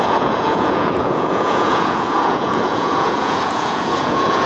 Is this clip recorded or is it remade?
remade